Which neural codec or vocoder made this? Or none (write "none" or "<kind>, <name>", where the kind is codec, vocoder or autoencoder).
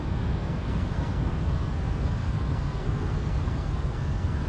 codec, SNAC